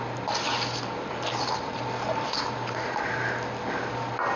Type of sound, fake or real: real